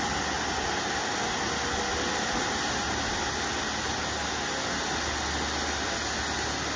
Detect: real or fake real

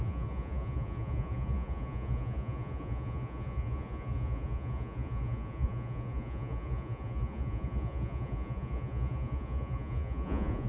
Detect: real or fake fake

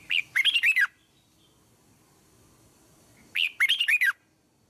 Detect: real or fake real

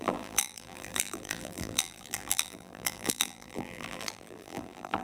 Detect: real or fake fake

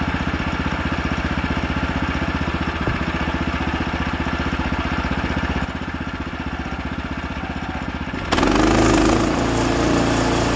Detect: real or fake real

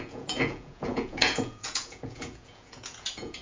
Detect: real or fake fake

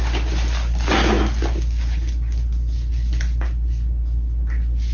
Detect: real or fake real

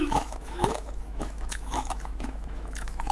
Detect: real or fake fake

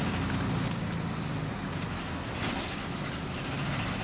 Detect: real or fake real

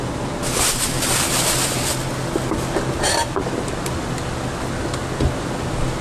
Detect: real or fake real